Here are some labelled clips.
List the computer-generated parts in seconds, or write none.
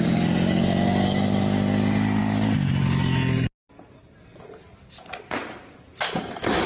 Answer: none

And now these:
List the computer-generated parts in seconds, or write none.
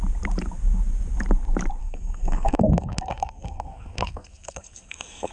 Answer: 1.8-5.3 (codec, SNAC)